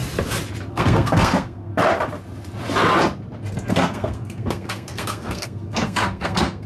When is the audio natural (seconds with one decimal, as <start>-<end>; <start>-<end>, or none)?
0.0-0.7; 1.7-3.7